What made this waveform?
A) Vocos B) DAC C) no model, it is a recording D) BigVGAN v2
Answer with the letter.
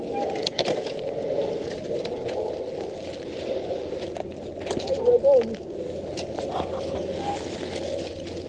C